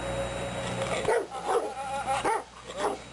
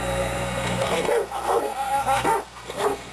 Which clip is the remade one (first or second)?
second